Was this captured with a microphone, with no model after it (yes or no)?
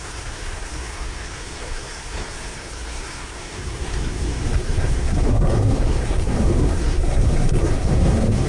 no